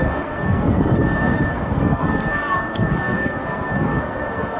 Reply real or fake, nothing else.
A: fake